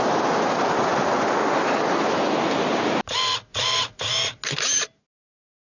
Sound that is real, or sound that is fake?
real